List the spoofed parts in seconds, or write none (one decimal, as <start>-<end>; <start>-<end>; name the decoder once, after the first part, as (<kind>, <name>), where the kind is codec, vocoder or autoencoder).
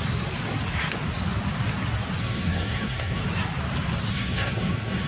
2.2-3.2 (codec, SNAC); 4.1-5.1